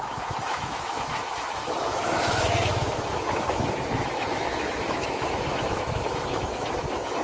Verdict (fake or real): fake